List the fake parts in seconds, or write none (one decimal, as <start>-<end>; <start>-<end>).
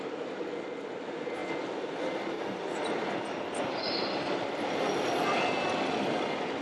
none